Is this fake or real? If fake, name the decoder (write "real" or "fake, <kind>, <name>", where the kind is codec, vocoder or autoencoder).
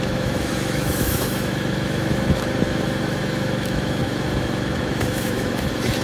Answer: fake, autoencoder, DAC-VAE